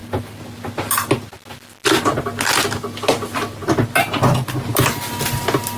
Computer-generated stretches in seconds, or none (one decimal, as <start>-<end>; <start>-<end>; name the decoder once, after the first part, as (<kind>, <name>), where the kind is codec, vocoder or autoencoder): none